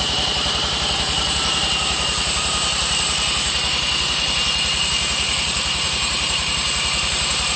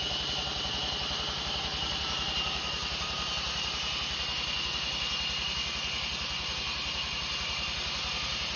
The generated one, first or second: first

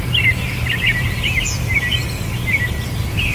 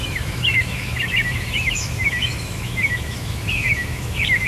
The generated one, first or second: second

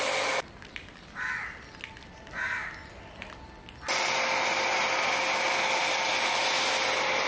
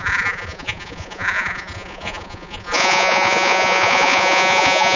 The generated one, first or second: second